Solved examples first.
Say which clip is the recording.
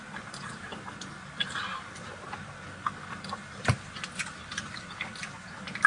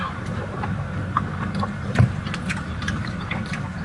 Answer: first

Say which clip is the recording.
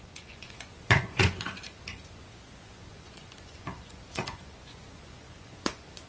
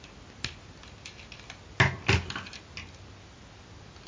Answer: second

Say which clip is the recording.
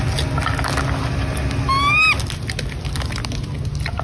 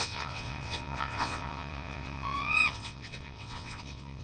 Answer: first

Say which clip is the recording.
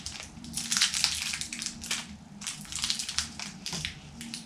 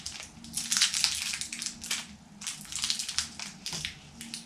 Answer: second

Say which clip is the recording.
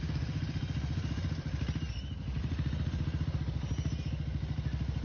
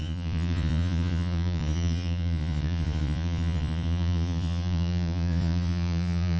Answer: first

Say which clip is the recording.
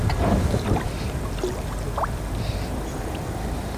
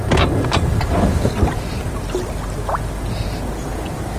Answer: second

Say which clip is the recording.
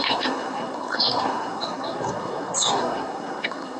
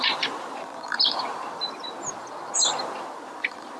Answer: second